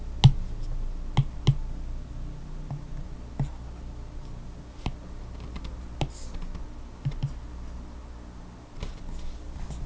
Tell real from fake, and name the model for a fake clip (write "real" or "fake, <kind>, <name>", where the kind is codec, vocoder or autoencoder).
real